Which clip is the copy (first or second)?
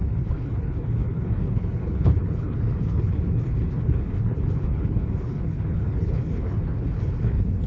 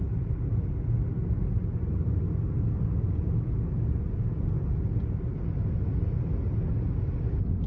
first